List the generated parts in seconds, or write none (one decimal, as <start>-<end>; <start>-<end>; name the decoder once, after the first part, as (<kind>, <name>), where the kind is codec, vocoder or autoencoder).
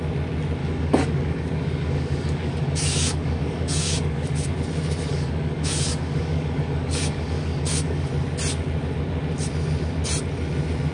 0.6-4.5 (codec, DAC); 5.1-8.1